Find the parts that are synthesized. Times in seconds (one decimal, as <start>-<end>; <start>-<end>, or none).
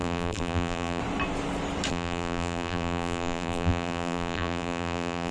0.0-1.0; 1.9-5.3